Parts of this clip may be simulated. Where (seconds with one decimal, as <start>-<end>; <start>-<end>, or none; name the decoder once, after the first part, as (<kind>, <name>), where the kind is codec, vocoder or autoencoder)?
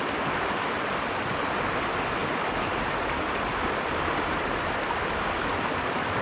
none